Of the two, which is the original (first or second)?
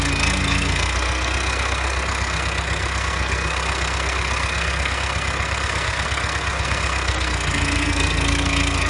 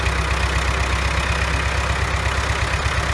second